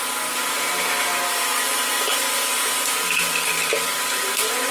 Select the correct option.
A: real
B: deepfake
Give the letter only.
A